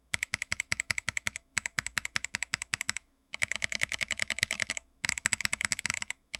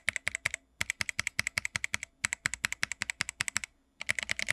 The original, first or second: second